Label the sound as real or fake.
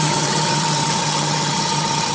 fake